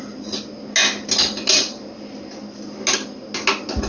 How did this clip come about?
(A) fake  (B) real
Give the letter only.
B